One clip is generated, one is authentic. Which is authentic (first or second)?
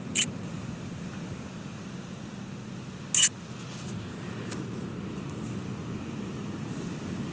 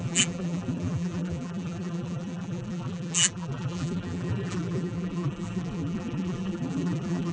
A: first